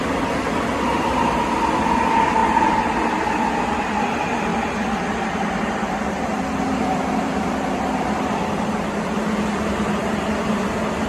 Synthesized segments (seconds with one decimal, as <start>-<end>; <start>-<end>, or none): 6.9-9.5